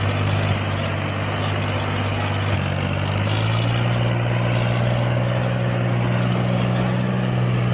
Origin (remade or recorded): recorded